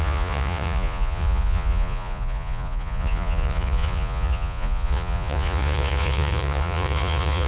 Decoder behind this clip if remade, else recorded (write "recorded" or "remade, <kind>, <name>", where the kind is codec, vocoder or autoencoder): remade, vocoder, Vocos